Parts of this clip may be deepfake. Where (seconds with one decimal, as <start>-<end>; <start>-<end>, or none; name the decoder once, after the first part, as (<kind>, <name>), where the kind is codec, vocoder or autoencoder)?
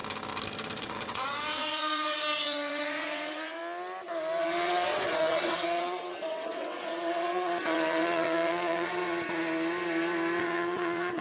0.8-3.6 (vocoder, WaveNeXt); 4.4-9.0; 10.4-11.2